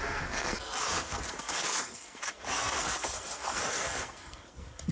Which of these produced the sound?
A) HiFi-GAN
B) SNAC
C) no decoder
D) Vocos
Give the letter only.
B